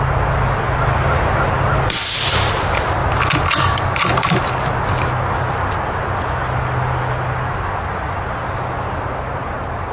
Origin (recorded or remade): recorded